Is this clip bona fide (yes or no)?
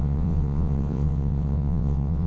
no